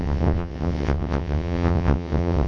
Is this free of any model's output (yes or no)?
no